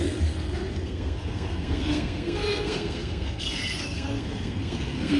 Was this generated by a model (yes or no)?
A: yes